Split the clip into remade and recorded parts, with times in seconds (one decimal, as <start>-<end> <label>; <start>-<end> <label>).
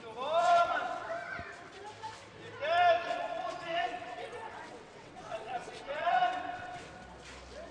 0.0-0.4 recorded; 0.4-1.1 remade; 1.1-3.0 recorded; 3.0-6.8 remade; 6.8-7.7 recorded